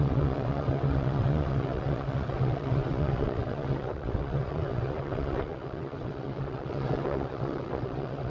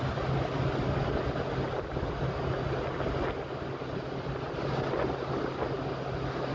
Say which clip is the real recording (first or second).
second